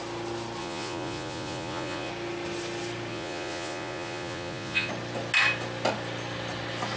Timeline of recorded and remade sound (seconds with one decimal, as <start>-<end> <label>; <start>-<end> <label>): 0.0-0.6 recorded; 0.6-2.1 remade; 2.1-3.1 recorded; 3.1-4.9 remade; 4.9-7.0 recorded